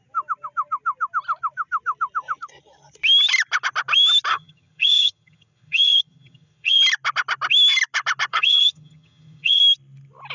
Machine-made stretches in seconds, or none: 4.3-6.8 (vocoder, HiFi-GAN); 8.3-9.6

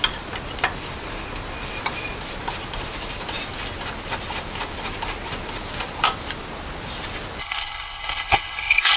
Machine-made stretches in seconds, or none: 7.4-9.0 (codec, HILCodec)

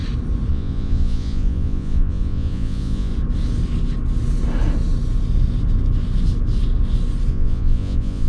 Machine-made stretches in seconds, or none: 0.5-3.1 (vocoder, Vocos); 7.3-8.3

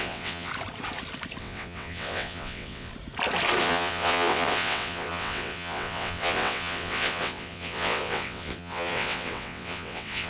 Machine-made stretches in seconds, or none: 0.0-0.5 (vocoder, WaveNeXt); 1.4-2.9; 3.6-10.3

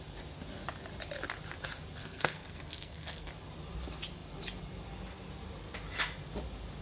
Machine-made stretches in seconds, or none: 2.0-3.3 (codec, SNAC)

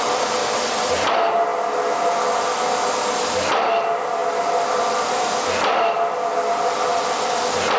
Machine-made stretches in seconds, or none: 0.4-1.1 (vocoder, BigVGAN v2)